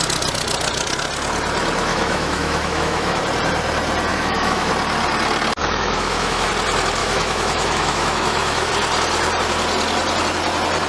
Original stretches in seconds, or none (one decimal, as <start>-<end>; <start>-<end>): 0.0-1.9; 3.2-4.1; 4.7-5.6; 6.5-7.0; 8.7-10.9